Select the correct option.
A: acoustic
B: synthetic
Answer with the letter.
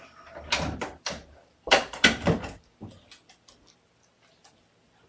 B